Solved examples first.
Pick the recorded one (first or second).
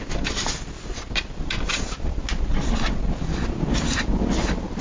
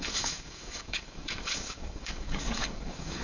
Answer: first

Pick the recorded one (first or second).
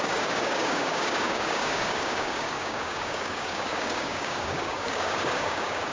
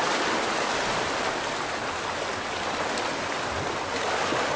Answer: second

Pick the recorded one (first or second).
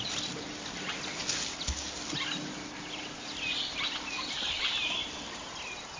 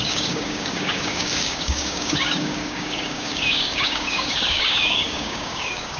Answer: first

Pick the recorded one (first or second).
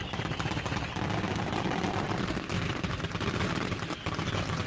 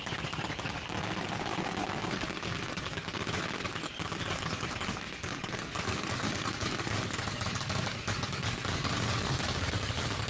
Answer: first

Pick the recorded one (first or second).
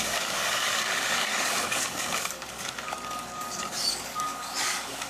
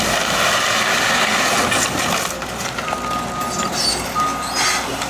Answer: second